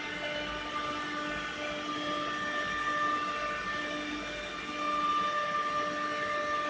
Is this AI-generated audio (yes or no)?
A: no